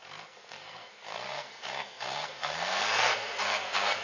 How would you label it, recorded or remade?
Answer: remade